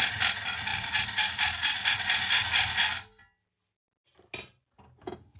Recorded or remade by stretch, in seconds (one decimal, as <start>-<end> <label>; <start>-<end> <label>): 0.0-5.4 recorded